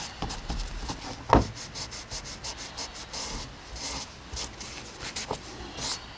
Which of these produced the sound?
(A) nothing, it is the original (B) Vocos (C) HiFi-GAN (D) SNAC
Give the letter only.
A